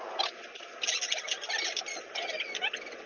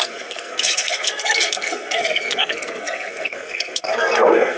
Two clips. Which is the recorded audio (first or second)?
first